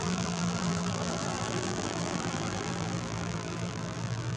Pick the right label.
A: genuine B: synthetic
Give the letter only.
B